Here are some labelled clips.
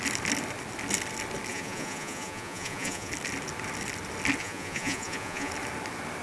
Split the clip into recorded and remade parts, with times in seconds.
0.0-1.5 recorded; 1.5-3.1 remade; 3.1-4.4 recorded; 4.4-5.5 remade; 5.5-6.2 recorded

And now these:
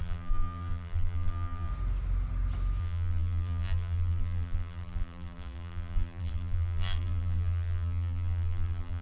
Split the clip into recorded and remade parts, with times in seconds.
0.0-1.7 remade; 1.7-2.8 recorded; 2.8-9.0 remade

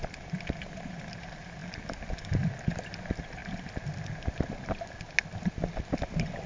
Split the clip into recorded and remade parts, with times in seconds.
0.0-6.5 recorded

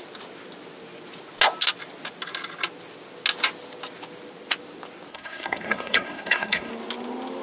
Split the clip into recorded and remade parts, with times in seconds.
0.0-5.1 recorded; 5.1-6.7 remade; 6.7-7.4 recorded

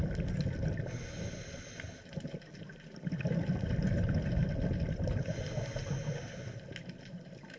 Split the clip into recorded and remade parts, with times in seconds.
0.0-7.6 recorded